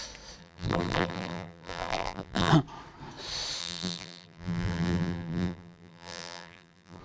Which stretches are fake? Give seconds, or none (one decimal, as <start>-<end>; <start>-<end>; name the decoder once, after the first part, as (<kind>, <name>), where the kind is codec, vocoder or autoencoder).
0.4-2.5 (vocoder, BigVGAN v2); 3.6-7.0